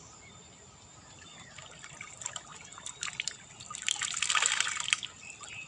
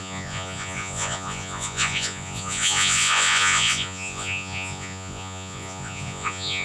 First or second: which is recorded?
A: first